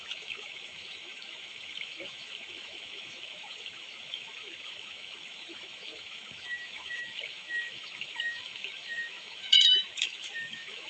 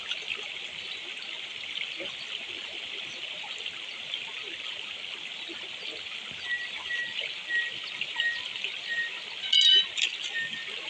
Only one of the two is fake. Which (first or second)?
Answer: first